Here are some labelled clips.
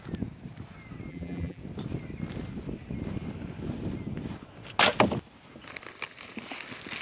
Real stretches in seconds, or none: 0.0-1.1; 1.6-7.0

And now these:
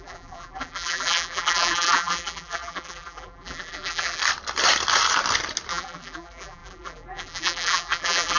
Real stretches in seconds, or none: 4.2-5.7

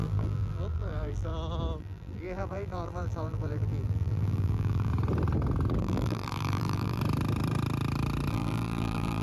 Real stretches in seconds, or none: 1.3-1.8; 4.9-5.8; 7.0-8.3

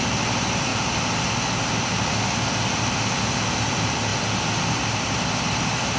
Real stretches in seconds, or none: 0.0-6.0